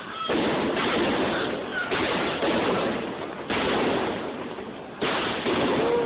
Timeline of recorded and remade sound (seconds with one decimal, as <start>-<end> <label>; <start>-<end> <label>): 0.0-6.1 recorded